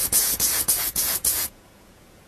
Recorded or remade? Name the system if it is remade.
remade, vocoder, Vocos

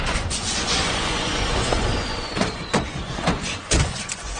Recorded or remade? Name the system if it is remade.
remade, vocoder, Vocos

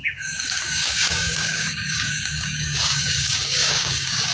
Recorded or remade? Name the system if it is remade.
remade, codec, DAC